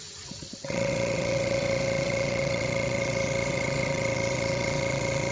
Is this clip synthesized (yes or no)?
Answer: yes